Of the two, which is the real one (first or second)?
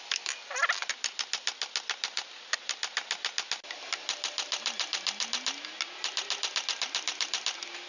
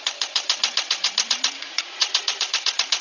first